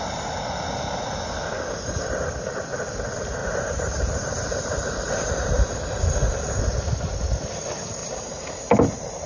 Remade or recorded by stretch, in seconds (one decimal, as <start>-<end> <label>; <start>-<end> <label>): 0.0-3.4 recorded; 3.4-6.6 remade; 6.6-8.0 recorded; 8.0-8.5 remade; 8.5-9.3 recorded